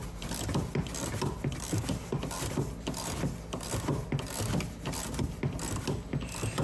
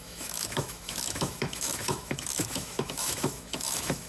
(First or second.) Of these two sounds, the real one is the first